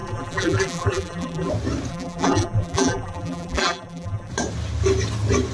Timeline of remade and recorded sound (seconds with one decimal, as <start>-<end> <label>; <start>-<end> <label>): 0.0-1.5 remade; 1.5-1.9 recorded; 1.9-4.3 remade; 4.3-5.5 recorded

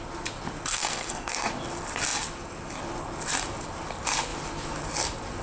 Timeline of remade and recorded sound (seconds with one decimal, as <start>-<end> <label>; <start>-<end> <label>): 0.0-0.7 recorded; 0.7-1.5 remade; 1.5-5.4 recorded

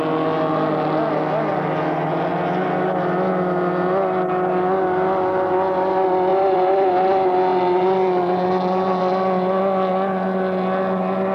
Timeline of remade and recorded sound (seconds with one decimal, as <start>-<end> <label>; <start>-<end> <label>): 0.0-6.3 recorded; 6.3-6.9 remade; 6.9-7.5 recorded; 7.5-9.0 remade; 9.0-11.3 recorded

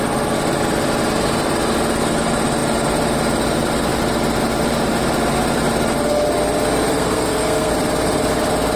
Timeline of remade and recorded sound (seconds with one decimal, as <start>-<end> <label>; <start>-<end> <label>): 0.0-6.9 recorded; 6.9-7.7 remade; 7.7-8.8 recorded

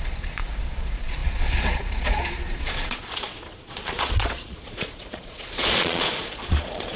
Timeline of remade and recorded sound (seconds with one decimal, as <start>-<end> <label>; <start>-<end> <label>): 0.0-7.0 remade

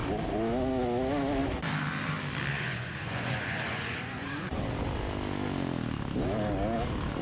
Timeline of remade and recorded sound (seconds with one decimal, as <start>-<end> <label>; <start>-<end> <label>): 0.0-2.5 recorded; 2.5-4.6 remade; 4.6-7.2 recorded

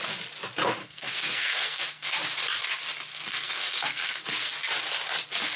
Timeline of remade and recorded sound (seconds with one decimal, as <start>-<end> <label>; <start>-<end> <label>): 0.0-0.8 recorded; 0.8-2.1 remade; 2.1-3.1 recorded; 3.1-4.5 remade; 4.5-5.6 recorded